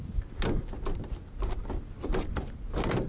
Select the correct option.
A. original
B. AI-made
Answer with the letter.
A